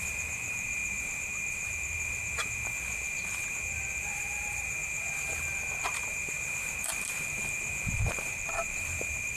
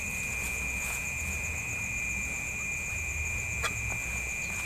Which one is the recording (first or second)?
second